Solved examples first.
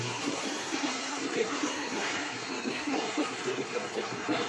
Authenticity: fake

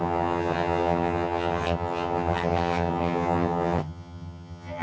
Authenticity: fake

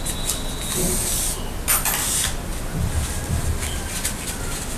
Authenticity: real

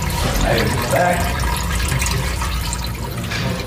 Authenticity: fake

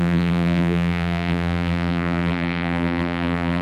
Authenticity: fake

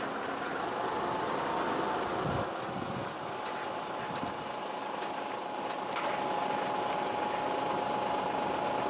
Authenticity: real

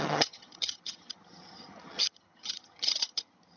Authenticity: fake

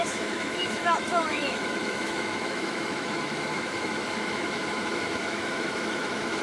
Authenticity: fake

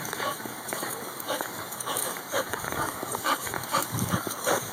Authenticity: fake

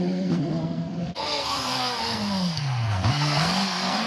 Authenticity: fake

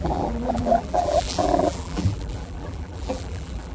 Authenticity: fake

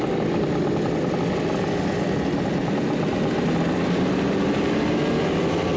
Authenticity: real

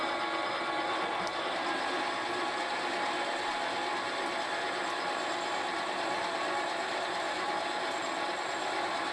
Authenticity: real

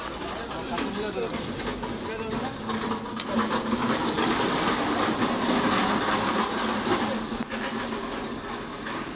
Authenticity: real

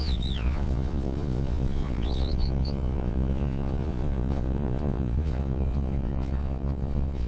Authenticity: fake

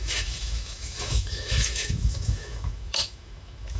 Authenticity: fake